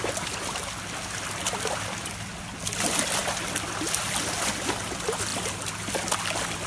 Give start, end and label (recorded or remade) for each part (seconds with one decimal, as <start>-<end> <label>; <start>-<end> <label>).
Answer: 0.0-6.7 recorded